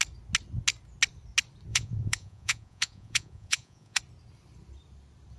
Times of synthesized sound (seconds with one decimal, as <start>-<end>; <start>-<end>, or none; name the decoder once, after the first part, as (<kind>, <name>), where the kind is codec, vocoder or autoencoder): 1.7-4.0 (vocoder, Vocos)